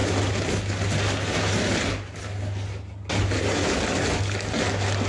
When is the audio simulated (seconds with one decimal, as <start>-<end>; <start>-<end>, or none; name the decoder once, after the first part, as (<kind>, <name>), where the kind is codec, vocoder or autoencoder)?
none